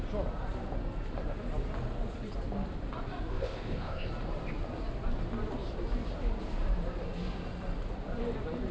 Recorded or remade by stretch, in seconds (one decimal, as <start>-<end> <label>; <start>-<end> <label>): 0.0-3.3 recorded; 3.3-4.1 remade; 4.1-8.7 recorded